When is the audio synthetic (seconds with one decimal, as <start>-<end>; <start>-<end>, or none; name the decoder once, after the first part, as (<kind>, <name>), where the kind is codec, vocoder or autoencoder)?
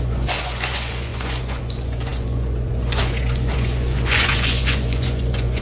0.0-5.6 (vocoder, Vocos)